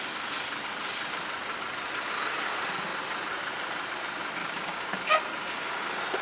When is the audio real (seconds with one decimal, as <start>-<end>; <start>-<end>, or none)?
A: 0.0-4.4; 4.9-6.2